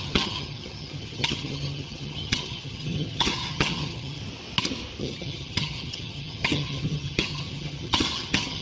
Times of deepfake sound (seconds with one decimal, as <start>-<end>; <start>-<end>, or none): 0.0-4.2; 5.0-8.6